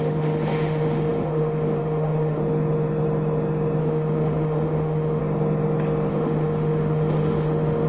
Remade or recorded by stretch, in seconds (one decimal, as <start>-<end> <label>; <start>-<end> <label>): 0.0-2.4 remade; 2.4-3.8 recorded; 3.8-5.2 remade; 5.2-6.1 recorded; 6.1-7.9 remade